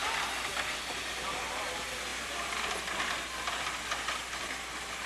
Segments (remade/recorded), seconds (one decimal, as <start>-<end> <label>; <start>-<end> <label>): 0.0-5.1 recorded